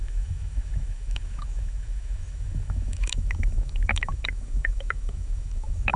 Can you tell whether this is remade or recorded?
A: remade